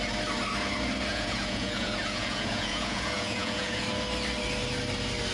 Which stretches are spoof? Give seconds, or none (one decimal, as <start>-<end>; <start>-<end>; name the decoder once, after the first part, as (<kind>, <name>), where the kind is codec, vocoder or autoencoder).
1.1-3.8 (vocoder, Vocos)